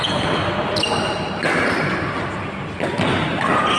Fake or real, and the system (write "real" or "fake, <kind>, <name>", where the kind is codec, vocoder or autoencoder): real